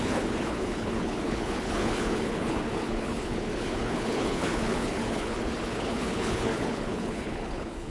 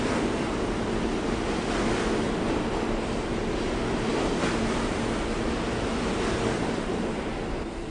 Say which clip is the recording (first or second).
second